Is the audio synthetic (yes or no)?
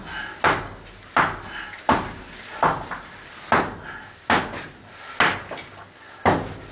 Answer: no